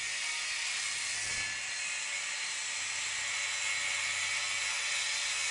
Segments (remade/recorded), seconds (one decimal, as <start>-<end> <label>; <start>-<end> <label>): 0.0-5.5 recorded